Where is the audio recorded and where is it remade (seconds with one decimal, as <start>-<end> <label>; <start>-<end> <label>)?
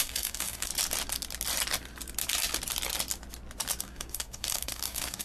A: 0.0-0.7 remade; 0.7-3.8 recorded; 3.8-5.2 remade